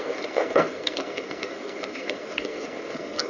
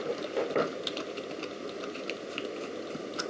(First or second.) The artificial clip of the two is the first